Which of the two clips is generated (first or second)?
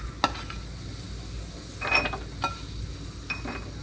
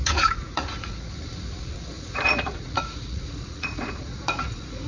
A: second